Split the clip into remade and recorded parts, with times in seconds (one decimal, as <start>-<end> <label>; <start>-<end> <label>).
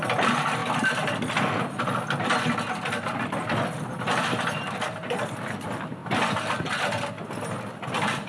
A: 0.0-8.3 recorded